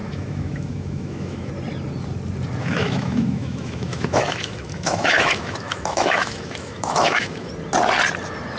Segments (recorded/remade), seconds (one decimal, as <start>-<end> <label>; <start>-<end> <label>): 0.0-1.5 remade; 1.5-2.6 recorded; 2.6-7.5 remade; 7.5-8.6 recorded